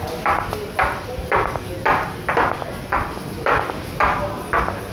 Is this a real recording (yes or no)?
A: yes